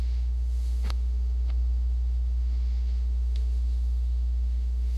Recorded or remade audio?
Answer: remade